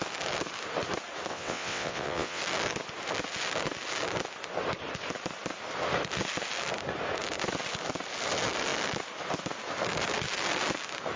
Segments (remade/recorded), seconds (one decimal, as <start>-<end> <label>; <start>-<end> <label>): 0.0-1.3 recorded; 1.3-2.4 remade; 2.4-11.2 recorded